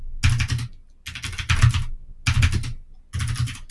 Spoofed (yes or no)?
no